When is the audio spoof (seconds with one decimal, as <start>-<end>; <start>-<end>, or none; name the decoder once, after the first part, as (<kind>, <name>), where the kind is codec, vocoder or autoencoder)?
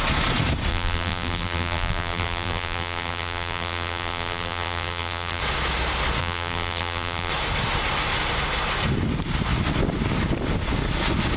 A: 0.7-5.4 (vocoder, BigVGAN v2); 6.2-7.3